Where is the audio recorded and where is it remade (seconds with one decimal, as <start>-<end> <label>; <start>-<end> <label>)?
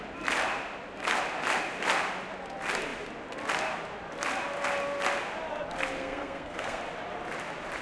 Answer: 0.0-6.0 recorded; 6.0-6.8 remade; 6.8-7.8 recorded